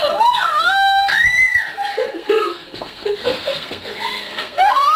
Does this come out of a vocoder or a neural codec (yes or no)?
yes